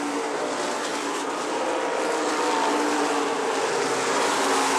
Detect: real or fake real